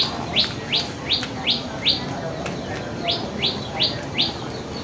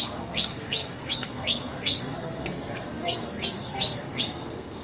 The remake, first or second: second